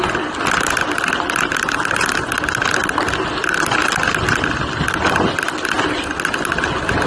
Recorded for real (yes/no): yes